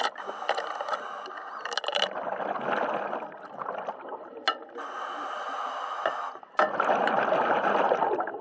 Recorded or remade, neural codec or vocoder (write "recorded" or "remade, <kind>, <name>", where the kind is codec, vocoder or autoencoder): recorded